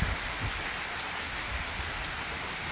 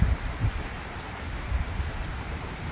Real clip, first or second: first